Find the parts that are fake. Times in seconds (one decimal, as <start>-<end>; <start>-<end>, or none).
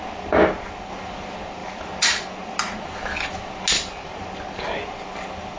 none